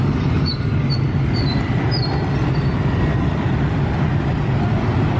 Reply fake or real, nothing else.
real